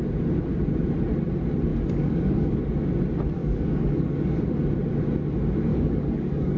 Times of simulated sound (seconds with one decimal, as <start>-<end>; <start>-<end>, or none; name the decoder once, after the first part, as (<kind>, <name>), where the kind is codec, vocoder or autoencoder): 1.7-2.6 (codec, DAC); 3.4-4.4; 5.7-6.6